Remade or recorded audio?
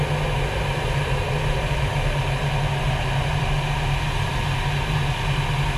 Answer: recorded